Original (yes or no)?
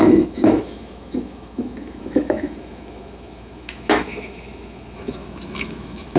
no